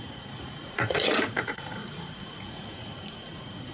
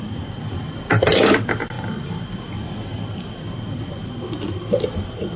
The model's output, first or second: first